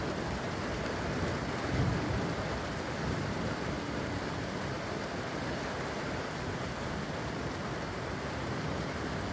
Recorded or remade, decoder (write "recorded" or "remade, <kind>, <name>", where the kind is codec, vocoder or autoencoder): recorded